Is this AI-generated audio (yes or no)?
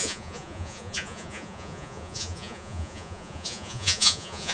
yes